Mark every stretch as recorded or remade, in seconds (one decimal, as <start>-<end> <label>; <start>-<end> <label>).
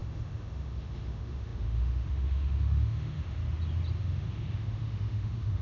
0.0-3.4 remade; 3.4-4.0 recorded; 4.0-5.6 remade